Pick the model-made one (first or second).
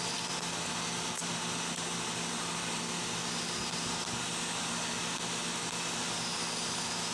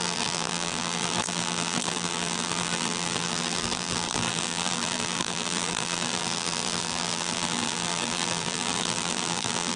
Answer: second